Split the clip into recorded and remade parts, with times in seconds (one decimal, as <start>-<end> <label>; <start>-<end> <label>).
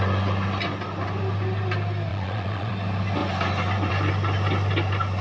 0.0-2.1 recorded; 2.1-2.7 remade; 2.7-5.2 recorded